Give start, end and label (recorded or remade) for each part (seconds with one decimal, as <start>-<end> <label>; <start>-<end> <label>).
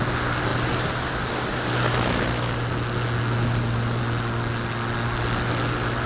0.0-6.1 recorded